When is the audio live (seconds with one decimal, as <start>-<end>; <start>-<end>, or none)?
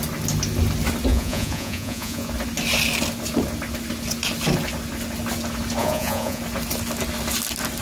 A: 0.0-1.1; 2.3-5.8; 6.4-7.8